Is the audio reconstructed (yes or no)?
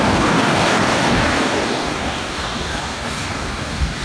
yes